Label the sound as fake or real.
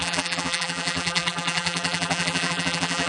fake